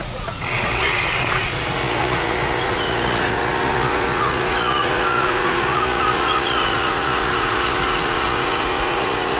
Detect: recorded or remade remade